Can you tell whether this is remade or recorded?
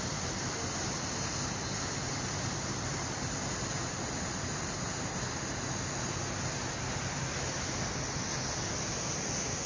recorded